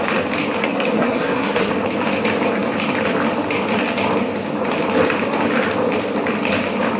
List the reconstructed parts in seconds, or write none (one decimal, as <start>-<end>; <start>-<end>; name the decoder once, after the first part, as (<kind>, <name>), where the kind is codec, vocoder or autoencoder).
0.6-1.7 (codec, SNAC)